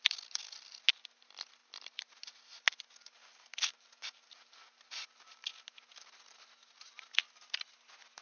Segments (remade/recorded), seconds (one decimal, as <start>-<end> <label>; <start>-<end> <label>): 0.0-8.2 recorded